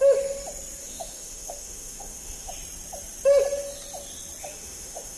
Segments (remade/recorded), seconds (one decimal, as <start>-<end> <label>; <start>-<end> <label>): 0.0-0.8 recorded; 0.8-2.5 remade; 2.5-4.4 recorded; 4.4-5.2 remade